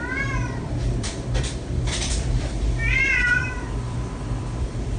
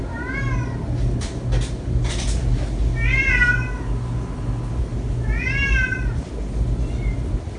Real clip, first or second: second